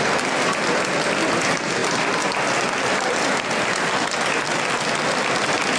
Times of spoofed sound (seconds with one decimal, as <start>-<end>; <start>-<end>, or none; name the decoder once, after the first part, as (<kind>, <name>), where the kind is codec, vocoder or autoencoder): none